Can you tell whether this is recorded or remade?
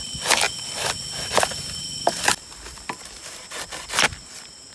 recorded